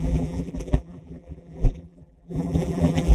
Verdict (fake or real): fake